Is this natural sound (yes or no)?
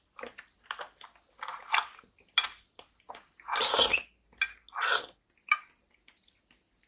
yes